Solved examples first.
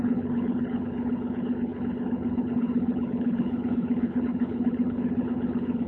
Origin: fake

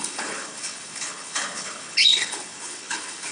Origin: fake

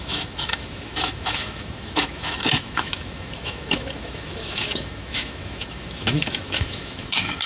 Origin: fake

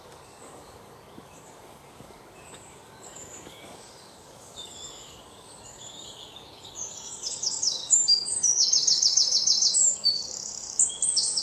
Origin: fake